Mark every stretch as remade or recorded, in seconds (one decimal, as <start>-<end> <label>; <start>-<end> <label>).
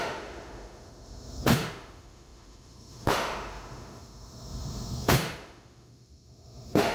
0.0-6.9 remade